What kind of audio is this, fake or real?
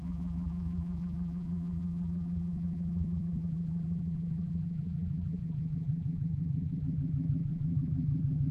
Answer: fake